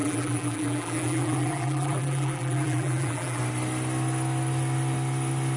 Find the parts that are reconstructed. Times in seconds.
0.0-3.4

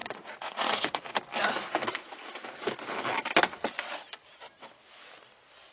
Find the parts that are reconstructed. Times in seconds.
0.0-1.1

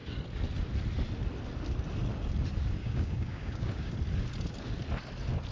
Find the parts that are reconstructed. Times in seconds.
2.8-3.9

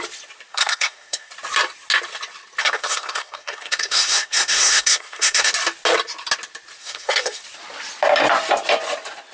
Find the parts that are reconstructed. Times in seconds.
0.5-1.3; 2.6-5.5; 6.8-7.4

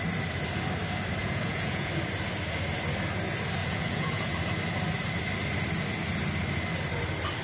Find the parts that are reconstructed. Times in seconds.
1.2-1.9; 3.6-4.3

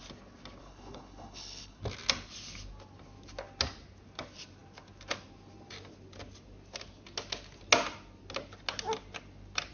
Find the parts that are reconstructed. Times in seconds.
0.6-1.8

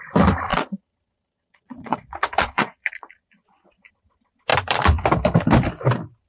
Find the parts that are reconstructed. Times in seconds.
0.5-3.9

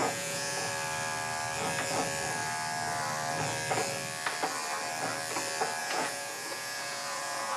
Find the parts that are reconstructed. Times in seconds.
0.0-0.7; 5.8-7.6